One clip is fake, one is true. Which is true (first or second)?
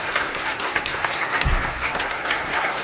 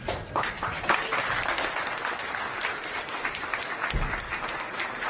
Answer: second